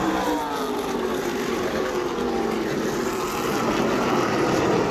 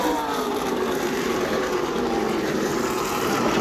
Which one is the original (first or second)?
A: first